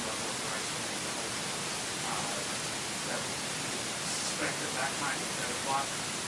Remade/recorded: recorded